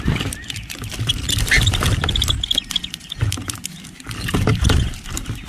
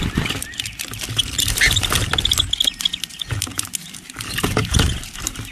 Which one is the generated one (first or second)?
first